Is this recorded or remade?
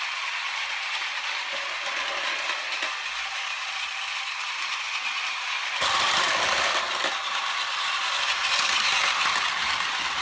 recorded